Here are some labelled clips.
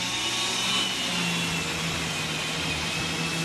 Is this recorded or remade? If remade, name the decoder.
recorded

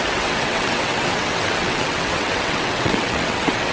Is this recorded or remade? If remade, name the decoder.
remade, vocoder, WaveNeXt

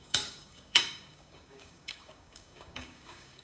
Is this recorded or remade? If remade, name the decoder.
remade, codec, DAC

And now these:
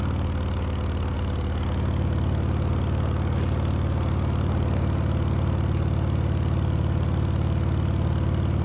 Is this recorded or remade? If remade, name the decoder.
recorded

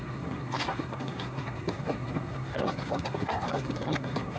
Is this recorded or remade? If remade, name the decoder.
remade, codec, SNAC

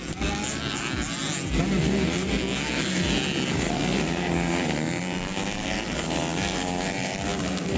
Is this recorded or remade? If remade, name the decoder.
recorded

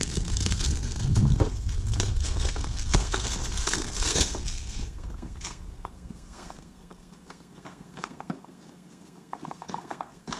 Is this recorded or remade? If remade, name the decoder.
remade, codec, SNAC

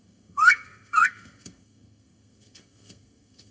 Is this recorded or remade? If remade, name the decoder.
remade, codec, SNAC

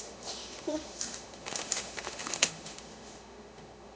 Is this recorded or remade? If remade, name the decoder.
remade, autoencoder, DAC-VAE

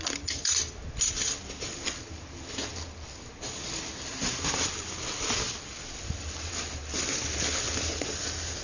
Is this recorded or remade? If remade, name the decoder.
recorded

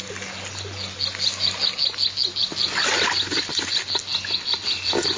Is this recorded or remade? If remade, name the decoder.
recorded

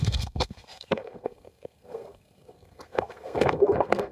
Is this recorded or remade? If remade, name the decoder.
remade, codec, SNAC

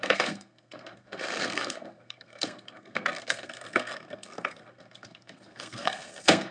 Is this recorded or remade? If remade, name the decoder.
remade, codec, SNAC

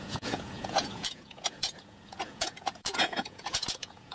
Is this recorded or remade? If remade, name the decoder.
remade, vocoder, Vocos